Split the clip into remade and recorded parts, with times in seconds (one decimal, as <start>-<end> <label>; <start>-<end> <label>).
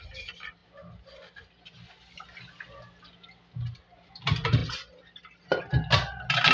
0.0-6.5 recorded